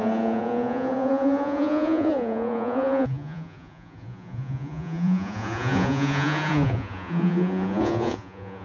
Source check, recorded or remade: remade